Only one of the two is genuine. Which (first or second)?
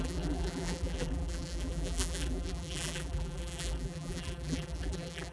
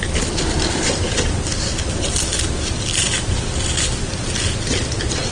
second